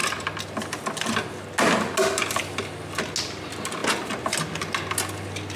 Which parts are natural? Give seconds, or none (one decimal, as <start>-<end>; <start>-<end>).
0.0-5.6